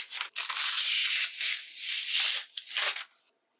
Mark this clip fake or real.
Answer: real